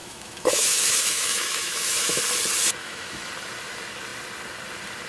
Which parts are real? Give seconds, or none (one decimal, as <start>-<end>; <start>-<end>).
2.2-2.8; 3.3-5.1